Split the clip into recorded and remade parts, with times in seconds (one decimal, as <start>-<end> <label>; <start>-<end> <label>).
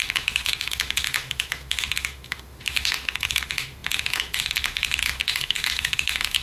0.0-6.4 remade